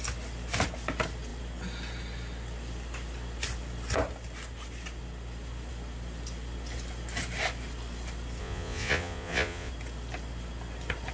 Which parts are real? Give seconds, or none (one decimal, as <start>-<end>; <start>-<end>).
0.0-8.4; 9.7-11.1